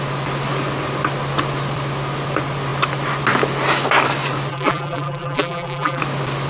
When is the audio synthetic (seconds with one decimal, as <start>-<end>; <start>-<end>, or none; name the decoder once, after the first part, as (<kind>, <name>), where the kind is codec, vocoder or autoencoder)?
4.5-6.0 (vocoder, BigVGAN v2)